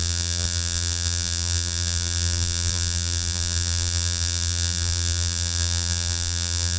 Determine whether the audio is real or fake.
fake